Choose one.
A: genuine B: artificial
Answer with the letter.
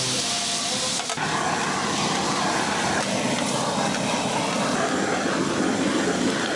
A